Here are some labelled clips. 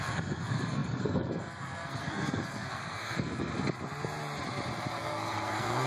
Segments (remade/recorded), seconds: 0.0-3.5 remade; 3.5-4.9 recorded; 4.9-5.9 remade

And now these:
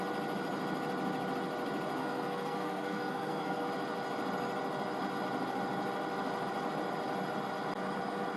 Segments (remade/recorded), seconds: 0.0-2.0 recorded; 2.0-3.7 remade; 3.7-8.4 recorded

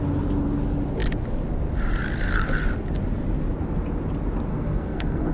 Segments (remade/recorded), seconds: 0.0-4.5 recorded; 4.5-5.3 remade

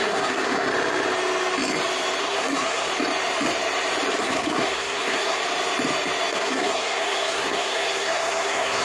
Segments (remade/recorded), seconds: 0.0-0.7 remade; 0.7-2.2 recorded; 2.2-2.9 remade; 2.9-4.2 recorded; 4.2-5.4 remade; 5.4-6.3 recorded; 6.3-8.8 remade